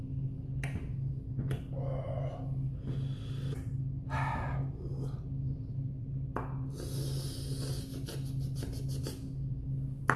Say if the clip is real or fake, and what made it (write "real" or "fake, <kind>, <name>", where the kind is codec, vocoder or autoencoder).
real